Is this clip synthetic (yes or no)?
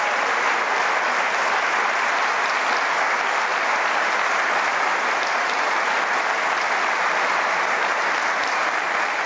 no